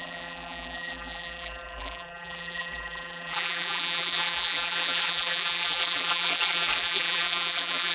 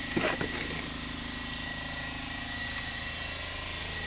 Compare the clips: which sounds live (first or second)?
second